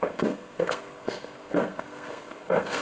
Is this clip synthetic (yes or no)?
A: yes